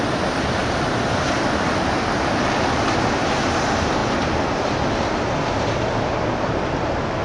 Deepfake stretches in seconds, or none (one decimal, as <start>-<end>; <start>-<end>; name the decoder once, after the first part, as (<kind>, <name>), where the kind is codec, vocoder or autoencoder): none